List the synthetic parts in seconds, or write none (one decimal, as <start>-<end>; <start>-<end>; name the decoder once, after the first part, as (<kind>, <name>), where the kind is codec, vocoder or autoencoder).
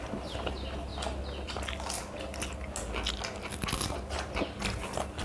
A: none